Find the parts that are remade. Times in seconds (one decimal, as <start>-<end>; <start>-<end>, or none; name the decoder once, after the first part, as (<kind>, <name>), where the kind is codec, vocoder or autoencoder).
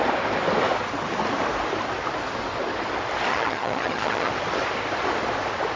3.3-4.3 (vocoder, HiFi-GAN)